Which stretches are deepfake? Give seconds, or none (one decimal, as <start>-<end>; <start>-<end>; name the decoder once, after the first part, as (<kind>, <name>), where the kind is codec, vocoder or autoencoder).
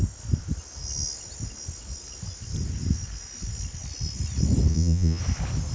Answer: 4.7-5.2 (vocoder, Vocos)